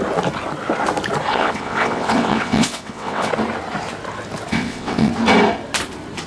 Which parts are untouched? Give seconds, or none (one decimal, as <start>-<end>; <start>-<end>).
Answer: 0.0-1.3; 3.3-4.5; 5.1-6.3